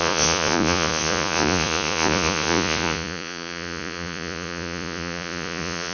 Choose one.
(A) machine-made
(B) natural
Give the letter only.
A